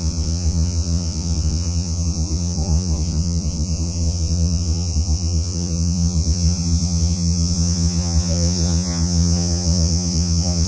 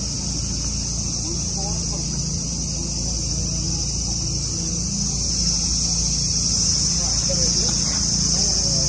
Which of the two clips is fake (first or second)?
first